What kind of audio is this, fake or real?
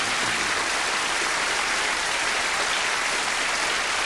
fake